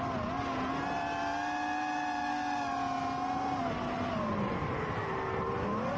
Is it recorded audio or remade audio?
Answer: recorded